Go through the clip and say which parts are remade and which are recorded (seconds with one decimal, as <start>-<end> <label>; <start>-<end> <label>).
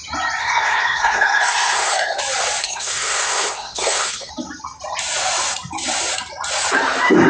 0.0-0.4 recorded; 0.4-2.2 remade; 2.2-2.6 recorded; 2.6-4.3 remade; 4.3-7.3 recorded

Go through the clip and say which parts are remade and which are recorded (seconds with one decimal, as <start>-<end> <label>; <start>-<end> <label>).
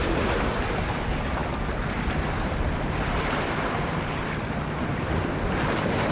0.0-6.1 recorded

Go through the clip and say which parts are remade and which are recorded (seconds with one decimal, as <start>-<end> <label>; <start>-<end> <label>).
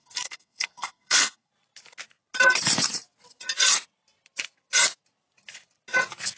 0.0-1.5 remade; 1.5-6.4 recorded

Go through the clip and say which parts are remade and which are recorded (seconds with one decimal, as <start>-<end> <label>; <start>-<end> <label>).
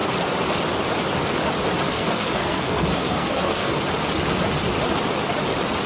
0.0-1.9 recorded; 1.9-3.7 remade; 3.7-5.9 recorded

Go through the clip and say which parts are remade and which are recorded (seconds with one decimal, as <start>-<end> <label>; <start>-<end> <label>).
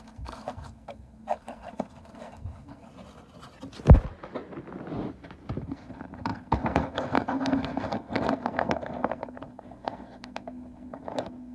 0.0-2.9 remade; 2.9-5.6 recorded; 5.6-11.5 remade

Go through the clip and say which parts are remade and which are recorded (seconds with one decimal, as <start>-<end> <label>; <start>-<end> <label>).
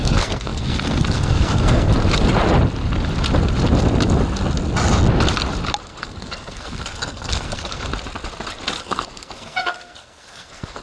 0.0-1.9 remade; 1.9-5.8 recorded; 5.8-7.9 remade; 7.9-8.8 recorded; 8.8-10.8 remade